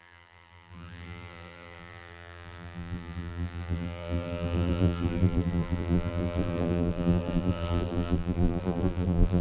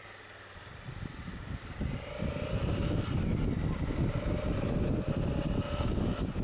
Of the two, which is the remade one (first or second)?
first